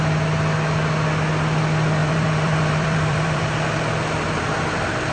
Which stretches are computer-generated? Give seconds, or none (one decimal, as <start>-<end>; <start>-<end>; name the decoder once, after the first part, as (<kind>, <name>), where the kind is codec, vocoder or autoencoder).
2.0-3.4 (vocoder, BigVGAN v2)